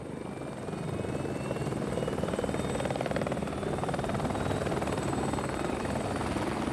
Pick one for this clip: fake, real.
real